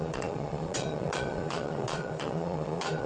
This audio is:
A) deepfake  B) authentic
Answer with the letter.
A